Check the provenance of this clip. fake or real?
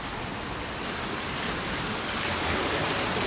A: real